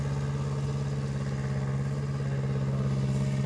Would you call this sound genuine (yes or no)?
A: yes